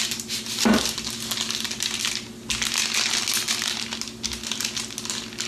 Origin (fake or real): real